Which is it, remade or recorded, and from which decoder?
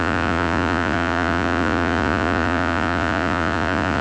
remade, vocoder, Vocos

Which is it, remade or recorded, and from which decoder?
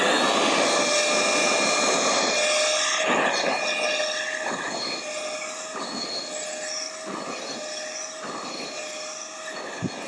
recorded